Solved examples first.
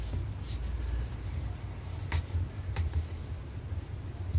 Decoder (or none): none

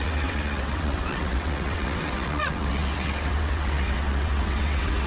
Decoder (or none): vocoder, WaveNeXt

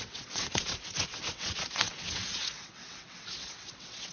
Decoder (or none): vocoder, WaveNeXt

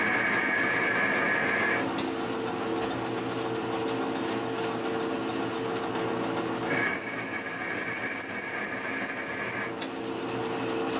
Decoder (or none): none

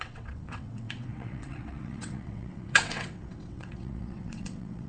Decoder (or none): vocoder, WaveNeXt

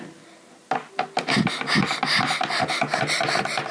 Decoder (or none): none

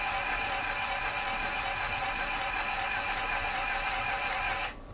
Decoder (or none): none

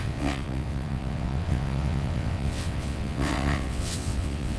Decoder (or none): vocoder, WaveNeXt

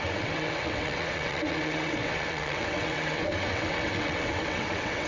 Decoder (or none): vocoder, WaveNeXt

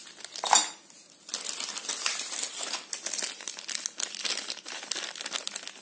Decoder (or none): none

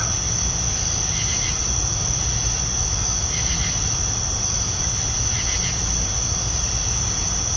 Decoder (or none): none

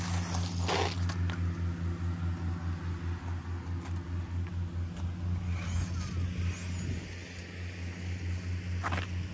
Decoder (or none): none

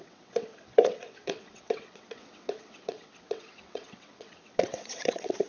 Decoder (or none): vocoder, WaveNeXt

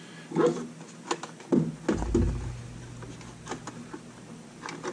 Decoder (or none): none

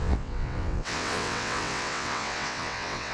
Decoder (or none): vocoder, WaveNeXt